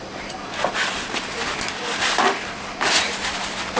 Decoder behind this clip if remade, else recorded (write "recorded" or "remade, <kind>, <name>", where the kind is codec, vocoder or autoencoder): recorded